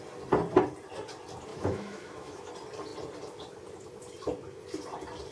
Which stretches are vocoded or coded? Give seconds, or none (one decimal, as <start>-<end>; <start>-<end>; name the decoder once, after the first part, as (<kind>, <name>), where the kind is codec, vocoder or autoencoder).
1.5-2.5 (autoencoder, DAC-VAE)